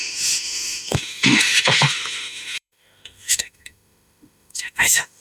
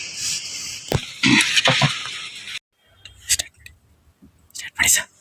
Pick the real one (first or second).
second